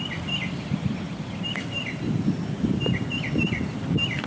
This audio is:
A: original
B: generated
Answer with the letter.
A